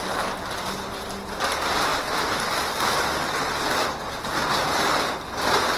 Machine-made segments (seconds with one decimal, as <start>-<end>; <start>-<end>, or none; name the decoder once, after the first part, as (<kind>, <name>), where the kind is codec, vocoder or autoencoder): none